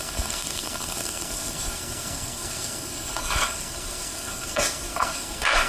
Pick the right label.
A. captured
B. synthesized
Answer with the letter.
B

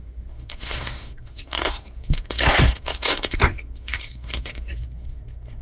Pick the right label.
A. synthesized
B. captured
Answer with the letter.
A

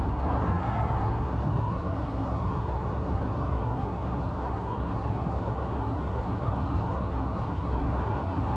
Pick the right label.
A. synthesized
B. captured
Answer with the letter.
A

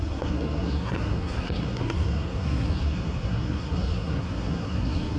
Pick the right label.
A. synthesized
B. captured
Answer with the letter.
A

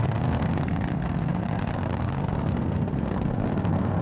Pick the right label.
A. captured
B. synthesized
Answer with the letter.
B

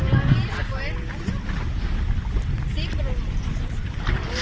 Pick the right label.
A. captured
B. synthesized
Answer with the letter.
A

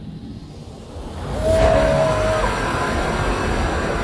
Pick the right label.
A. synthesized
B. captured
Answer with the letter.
B